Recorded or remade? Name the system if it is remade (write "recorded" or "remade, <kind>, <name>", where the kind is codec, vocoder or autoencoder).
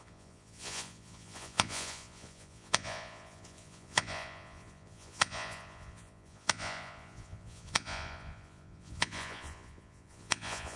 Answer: remade, vocoder, Vocos